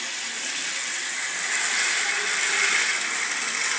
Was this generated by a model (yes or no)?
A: no